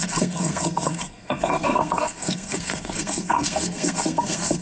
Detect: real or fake fake